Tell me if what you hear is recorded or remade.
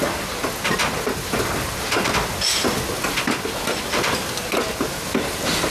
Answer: recorded